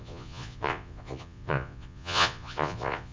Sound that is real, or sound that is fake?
fake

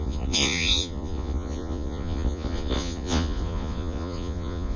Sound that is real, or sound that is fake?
fake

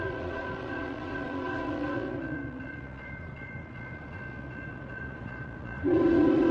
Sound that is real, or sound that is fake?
fake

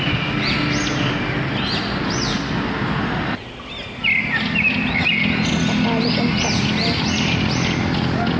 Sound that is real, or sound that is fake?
real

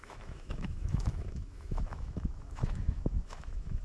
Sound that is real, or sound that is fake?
fake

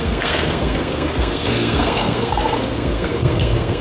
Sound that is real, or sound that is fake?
fake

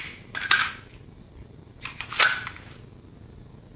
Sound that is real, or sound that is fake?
real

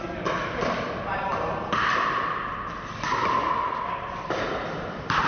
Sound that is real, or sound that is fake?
real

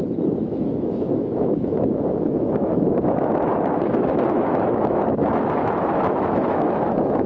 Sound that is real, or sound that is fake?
fake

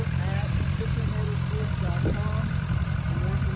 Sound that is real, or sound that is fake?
real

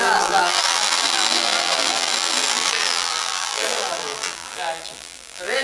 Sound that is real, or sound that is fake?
fake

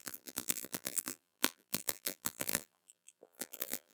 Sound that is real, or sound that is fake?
fake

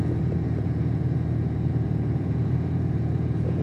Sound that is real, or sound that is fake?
fake